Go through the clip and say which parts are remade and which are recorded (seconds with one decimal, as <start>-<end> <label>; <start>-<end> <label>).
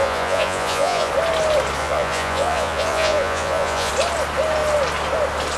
0.0-1.1 remade; 1.1-1.8 recorded; 1.8-3.9 remade; 3.9-5.6 recorded